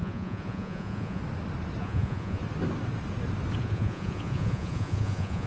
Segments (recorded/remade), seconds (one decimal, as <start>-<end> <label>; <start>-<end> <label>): 0.0-1.2 remade; 1.2-1.8 recorded; 1.8-2.4 remade; 2.4-3.6 recorded; 3.6-5.5 remade